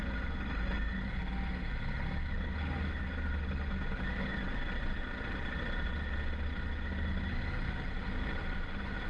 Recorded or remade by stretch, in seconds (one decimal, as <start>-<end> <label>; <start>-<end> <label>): 0.0-9.1 recorded